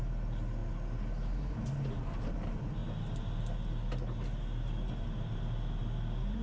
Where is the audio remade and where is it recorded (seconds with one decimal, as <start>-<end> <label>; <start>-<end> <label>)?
0.0-6.4 recorded

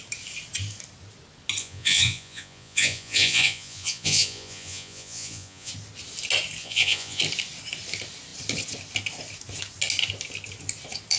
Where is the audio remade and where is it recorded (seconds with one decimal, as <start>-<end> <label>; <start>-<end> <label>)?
0.0-1.6 recorded; 1.6-5.7 remade; 5.7-6.6 recorded; 6.6-7.2 remade; 7.2-11.2 recorded

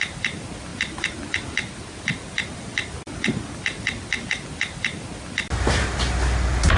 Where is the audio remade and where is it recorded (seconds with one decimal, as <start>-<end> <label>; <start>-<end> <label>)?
0.0-6.8 recorded

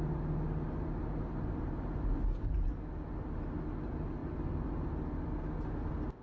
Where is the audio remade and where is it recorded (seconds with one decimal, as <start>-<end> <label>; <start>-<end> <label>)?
0.0-6.2 recorded